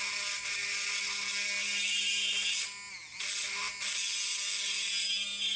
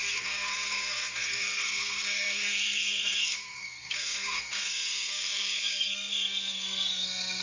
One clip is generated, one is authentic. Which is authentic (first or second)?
first